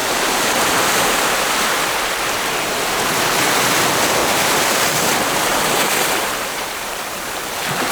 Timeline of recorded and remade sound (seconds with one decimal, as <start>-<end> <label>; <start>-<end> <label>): 0.0-4.2 recorded; 4.2-5.0 remade; 5.0-5.5 recorded; 5.5-7.4 remade; 7.4-7.9 recorded